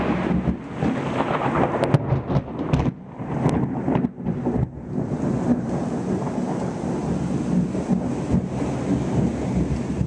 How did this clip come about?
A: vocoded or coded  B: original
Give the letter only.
B